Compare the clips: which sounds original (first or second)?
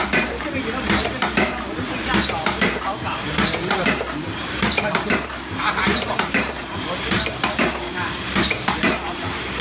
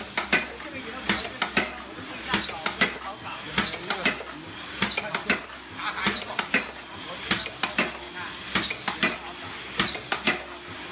second